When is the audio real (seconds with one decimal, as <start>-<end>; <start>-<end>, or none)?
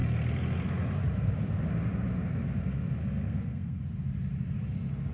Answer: 0.0-3.0; 3.8-5.1